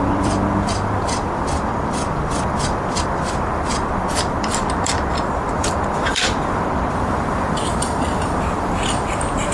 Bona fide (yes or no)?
no